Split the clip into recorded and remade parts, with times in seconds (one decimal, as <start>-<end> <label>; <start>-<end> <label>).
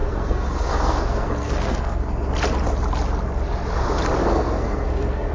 0.0-2.3 remade; 2.3-4.2 recorded; 4.2-5.3 remade